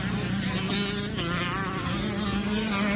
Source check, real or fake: real